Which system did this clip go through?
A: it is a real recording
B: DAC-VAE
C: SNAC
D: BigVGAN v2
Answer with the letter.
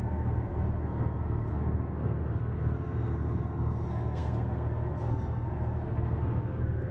C